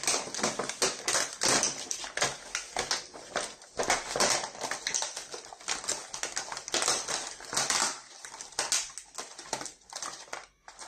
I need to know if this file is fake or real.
real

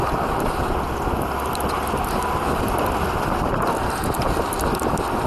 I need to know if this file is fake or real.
fake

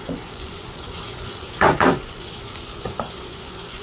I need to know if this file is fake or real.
fake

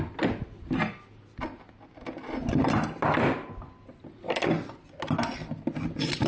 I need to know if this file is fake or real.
real